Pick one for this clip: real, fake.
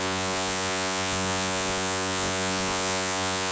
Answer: fake